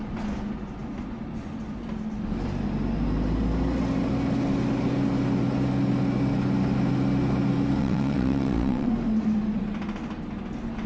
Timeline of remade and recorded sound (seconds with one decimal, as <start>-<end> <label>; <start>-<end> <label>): 0.0-7.8 recorded; 7.8-8.9 remade; 8.9-10.9 recorded